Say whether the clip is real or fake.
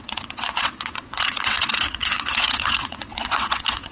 fake